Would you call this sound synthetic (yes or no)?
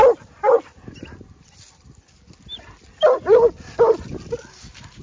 no